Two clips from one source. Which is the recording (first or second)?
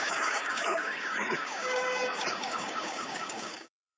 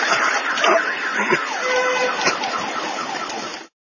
second